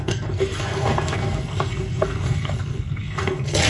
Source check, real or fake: fake